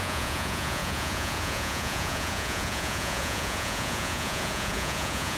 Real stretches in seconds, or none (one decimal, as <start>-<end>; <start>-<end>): none